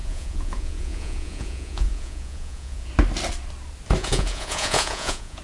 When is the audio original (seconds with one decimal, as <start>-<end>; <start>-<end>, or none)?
2.9-4.0